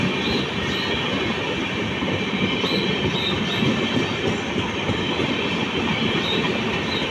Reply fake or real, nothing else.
fake